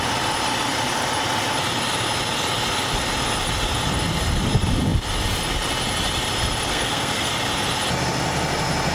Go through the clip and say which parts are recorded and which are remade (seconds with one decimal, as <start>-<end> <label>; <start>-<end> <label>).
0.0-6.7 recorded; 6.7-7.3 remade; 7.3-8.9 recorded